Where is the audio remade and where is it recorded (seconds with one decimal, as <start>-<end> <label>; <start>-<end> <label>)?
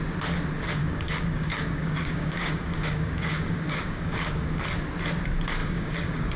0.0-0.8 recorded; 0.8-4.6 remade; 4.6-5.6 recorded; 5.6-6.4 remade